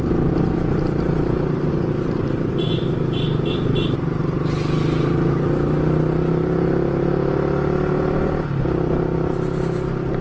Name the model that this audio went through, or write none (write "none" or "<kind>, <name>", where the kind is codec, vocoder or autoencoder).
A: none